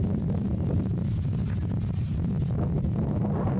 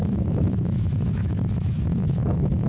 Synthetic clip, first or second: second